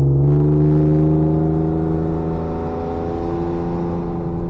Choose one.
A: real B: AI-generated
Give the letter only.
A